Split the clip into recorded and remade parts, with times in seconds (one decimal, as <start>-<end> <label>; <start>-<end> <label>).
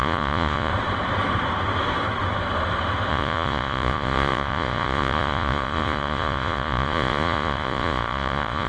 0.0-0.7 remade; 0.7-3.1 recorded; 3.1-8.7 remade